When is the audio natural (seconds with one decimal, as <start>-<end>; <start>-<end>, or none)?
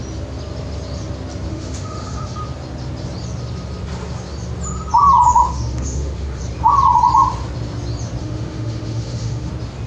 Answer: 0.0-1.5; 2.4-5.3; 6.4-8.2; 9.5-9.9